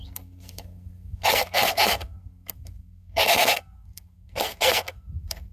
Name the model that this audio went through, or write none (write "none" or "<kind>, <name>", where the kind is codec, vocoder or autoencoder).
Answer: codec, SNAC